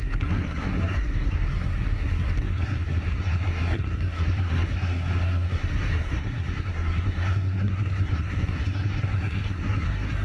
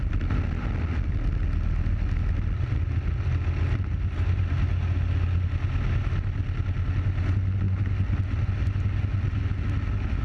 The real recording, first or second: second